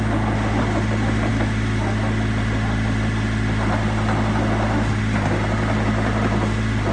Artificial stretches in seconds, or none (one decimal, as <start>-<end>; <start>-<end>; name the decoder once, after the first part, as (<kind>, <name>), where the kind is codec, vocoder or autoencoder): none